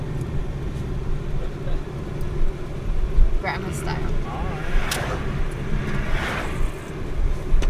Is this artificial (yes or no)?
no